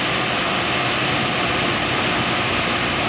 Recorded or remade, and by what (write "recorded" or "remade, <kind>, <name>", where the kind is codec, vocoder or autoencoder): recorded